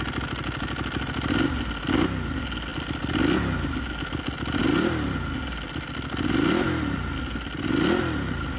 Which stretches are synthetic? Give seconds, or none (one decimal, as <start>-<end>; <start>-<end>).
none